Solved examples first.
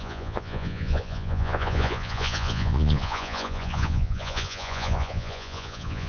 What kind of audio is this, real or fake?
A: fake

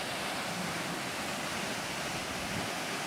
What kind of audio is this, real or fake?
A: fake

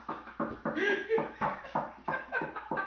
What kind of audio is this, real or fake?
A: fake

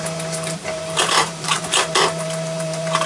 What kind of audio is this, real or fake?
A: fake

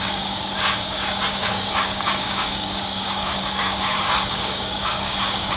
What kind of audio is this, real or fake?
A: fake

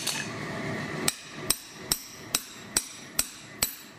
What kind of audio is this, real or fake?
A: fake